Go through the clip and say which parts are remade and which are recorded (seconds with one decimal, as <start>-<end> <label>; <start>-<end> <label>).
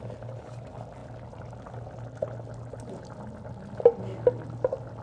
0.0-5.0 recorded